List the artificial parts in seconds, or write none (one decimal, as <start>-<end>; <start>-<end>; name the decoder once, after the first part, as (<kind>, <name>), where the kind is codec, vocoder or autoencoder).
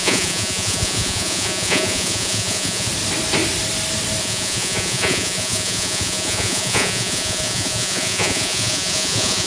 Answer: 0.0-2.9 (vocoder, Vocos); 4.2-9.5